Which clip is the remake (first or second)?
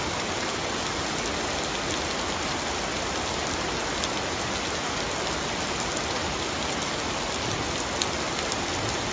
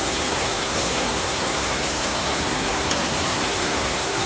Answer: second